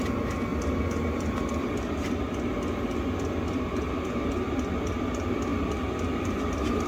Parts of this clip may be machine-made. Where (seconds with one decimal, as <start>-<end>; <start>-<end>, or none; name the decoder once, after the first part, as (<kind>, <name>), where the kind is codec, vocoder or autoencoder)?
none